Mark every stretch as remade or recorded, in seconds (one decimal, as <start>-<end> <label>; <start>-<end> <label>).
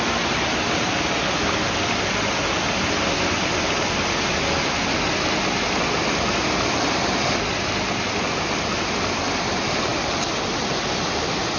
0.0-11.6 recorded